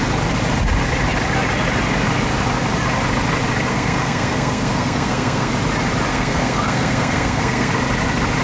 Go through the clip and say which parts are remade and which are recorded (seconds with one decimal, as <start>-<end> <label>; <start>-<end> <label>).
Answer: 0.0-3.7 recorded; 3.7-5.5 remade; 5.5-6.1 recorded; 6.1-7.7 remade; 7.7-8.4 recorded